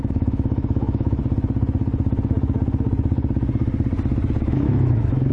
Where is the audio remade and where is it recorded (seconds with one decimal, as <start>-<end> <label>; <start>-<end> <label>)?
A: 0.0-1.2 remade; 1.2-4.4 recorded; 4.4-5.3 remade